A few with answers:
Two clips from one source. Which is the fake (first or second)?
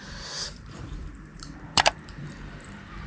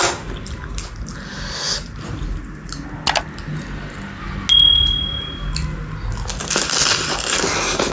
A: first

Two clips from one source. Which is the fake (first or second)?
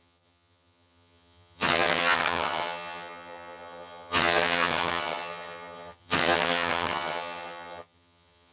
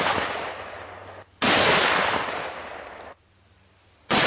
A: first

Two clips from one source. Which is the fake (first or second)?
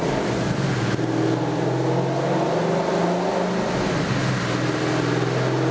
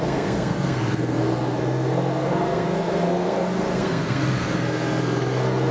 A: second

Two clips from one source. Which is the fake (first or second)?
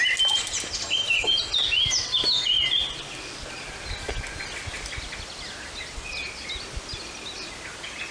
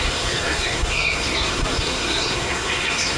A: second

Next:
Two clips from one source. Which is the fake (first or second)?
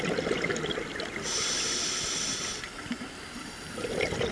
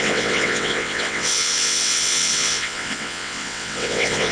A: second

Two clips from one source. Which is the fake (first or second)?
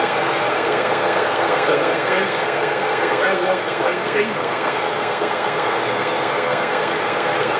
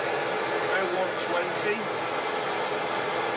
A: first